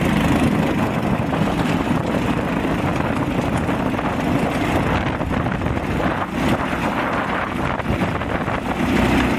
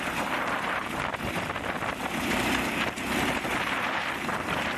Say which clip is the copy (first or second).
second